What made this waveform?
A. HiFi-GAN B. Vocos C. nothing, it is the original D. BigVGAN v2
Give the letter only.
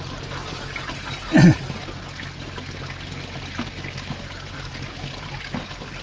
C